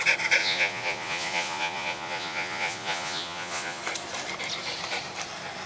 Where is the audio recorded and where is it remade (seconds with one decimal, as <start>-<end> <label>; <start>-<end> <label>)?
0.0-0.4 recorded; 0.4-3.8 remade; 3.8-5.7 recorded